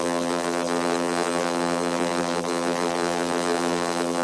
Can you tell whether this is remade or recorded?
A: remade